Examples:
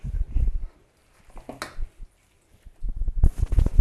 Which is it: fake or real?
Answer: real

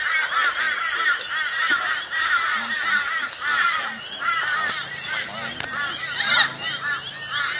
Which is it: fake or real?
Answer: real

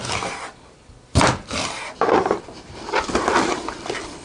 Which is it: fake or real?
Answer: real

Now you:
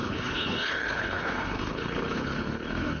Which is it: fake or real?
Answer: fake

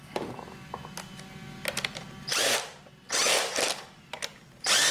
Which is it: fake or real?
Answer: real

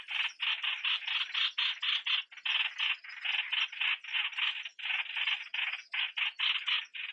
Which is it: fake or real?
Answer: real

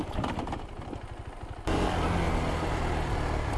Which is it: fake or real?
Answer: real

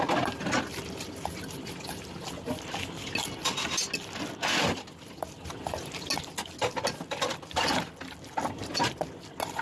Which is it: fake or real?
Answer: real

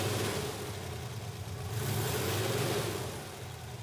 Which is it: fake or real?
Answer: real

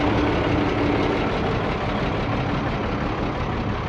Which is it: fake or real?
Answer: real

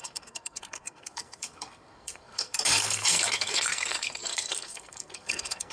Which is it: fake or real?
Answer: fake